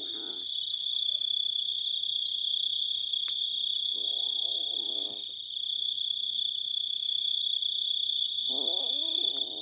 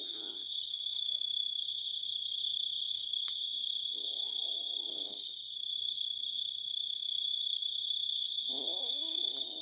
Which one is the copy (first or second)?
second